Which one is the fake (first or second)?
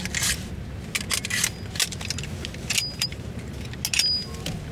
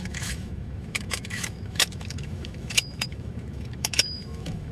second